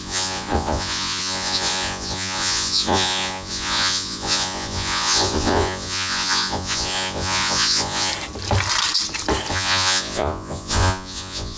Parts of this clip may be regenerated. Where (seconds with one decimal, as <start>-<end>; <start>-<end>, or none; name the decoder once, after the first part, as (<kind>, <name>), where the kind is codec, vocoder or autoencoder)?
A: 0.0-8.1 (vocoder, Vocos); 9.5-11.6